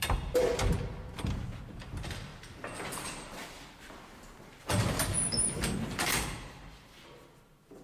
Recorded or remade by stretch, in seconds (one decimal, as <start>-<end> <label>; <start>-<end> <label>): 0.0-2.3 remade; 2.3-4.6 recorded; 4.6-7.8 remade